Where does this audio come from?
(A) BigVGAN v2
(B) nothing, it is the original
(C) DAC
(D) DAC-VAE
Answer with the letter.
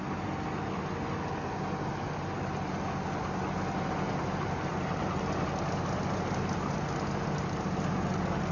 B